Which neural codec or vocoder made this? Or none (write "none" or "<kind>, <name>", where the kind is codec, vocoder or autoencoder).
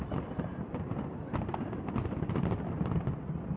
none